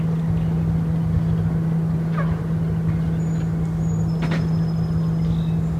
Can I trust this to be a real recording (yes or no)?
yes